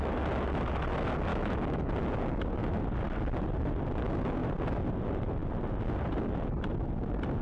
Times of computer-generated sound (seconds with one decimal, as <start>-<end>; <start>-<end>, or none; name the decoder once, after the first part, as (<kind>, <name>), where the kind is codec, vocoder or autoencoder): 1.3-1.9 (autoencoder, DAC-VAE)